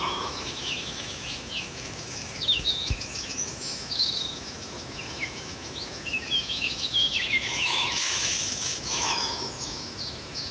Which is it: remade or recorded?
remade